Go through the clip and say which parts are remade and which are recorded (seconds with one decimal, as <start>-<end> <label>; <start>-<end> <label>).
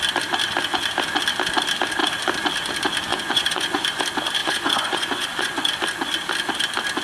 0.0-3.1 recorded; 3.1-4.0 remade; 4.0-4.4 recorded; 4.4-5.7 remade; 5.7-7.0 recorded